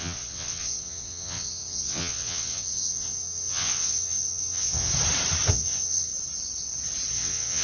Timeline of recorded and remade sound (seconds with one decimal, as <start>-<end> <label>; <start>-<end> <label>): 0.0-4.9 remade; 4.9-5.5 recorded; 5.5-6.1 remade; 6.1-7.1 recorded; 7.1-7.6 remade